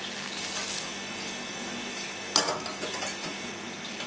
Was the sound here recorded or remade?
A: recorded